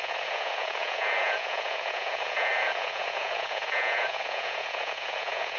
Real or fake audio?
fake